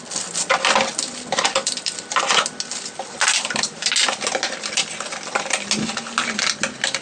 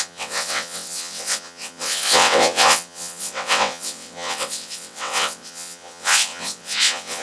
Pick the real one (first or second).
first